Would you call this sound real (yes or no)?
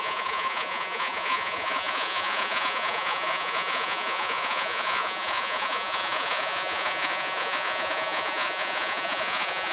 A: no